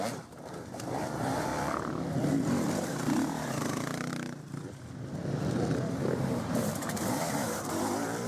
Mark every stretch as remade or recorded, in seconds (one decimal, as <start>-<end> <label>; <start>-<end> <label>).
0.0-1.5 remade; 1.5-2.7 recorded; 2.7-4.1 remade; 4.1-5.9 recorded; 5.9-8.3 remade